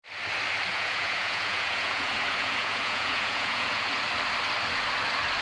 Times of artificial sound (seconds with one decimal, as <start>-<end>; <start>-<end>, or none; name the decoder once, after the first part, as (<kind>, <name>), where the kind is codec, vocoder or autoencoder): 0.7-3.9 (vocoder, Vocos)